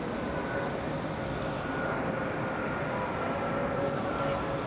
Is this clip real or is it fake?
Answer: real